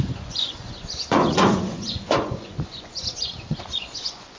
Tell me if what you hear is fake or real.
fake